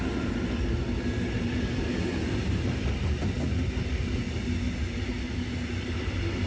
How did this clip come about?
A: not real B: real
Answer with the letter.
B